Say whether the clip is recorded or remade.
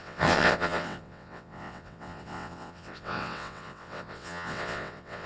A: remade